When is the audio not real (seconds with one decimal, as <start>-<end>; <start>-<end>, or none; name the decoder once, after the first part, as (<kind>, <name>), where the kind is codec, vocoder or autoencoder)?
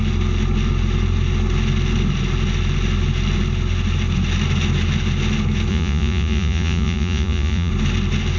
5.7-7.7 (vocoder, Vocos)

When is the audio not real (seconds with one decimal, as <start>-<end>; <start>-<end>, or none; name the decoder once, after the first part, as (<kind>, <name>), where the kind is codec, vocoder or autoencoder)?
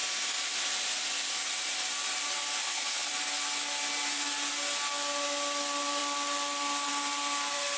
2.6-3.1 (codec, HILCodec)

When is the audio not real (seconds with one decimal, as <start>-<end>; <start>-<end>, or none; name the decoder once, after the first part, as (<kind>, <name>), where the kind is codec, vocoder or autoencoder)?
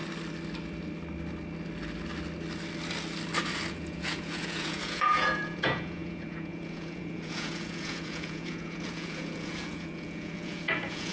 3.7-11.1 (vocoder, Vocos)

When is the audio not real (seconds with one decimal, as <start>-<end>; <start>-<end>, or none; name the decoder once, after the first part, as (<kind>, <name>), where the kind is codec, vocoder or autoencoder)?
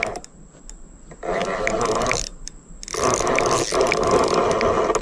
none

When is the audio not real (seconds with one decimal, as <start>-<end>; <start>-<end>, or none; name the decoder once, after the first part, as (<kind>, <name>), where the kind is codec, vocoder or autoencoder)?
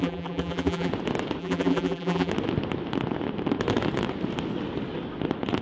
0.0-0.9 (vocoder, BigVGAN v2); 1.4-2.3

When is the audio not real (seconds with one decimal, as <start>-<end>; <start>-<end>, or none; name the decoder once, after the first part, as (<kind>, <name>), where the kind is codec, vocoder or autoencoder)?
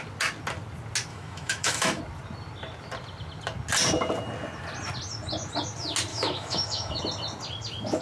1.1-2.0 (autoencoder, DAC-VAE); 6.1-7.0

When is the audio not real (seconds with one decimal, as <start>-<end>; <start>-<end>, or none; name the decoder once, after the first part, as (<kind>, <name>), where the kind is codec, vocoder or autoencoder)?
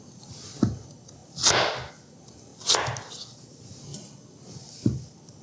none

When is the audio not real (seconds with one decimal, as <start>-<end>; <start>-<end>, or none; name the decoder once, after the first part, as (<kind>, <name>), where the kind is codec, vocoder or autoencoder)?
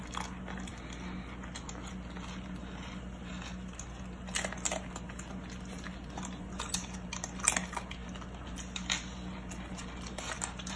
none